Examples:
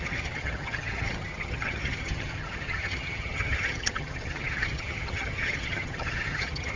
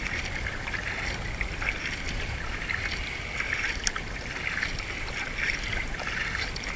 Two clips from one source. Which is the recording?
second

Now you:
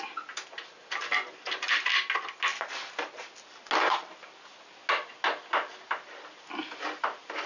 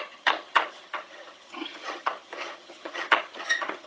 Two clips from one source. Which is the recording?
first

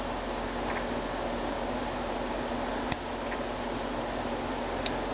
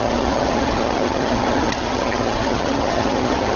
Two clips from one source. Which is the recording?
first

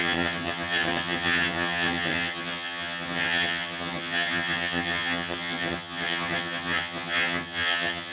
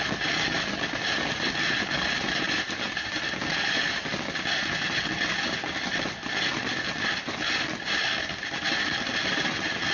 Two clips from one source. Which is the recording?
second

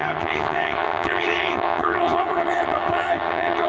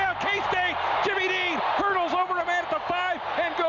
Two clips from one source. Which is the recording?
second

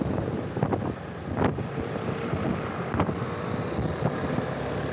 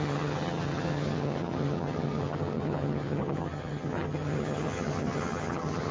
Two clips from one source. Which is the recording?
first